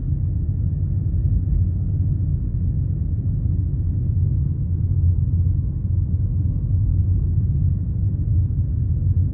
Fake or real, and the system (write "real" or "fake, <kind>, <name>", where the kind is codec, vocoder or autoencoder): real